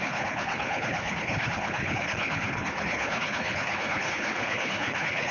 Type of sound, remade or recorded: remade